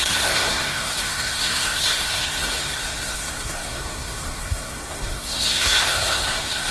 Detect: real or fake fake